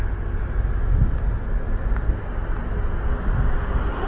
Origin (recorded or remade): recorded